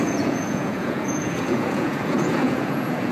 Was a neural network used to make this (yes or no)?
yes